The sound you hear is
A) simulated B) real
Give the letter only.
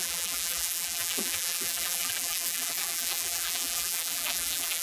A